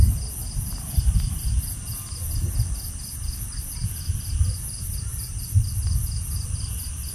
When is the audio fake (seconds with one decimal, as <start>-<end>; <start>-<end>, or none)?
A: none